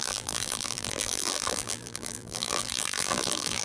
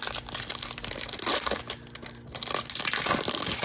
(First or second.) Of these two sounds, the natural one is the second